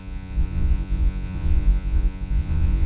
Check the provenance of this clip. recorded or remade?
remade